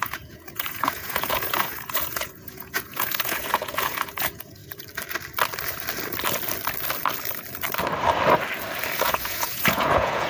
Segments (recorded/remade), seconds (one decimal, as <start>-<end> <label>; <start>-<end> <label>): 0.0-4.6 remade; 4.6-9.0 recorded; 9.0-10.3 remade